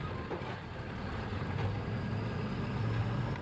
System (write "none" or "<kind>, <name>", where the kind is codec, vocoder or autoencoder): none